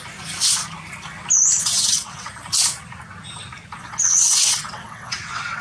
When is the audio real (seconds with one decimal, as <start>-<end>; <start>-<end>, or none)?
0.0-1.6; 2.3-3.8